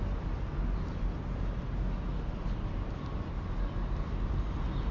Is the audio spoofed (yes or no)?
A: no